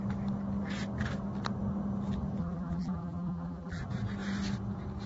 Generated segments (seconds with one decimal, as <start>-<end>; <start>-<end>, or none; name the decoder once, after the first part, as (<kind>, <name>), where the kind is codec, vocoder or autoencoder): 2.4-3.8 (vocoder, BigVGAN v2)